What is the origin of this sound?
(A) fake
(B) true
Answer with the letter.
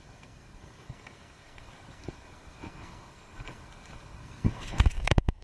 A